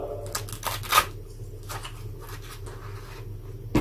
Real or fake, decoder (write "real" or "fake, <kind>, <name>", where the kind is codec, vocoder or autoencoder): real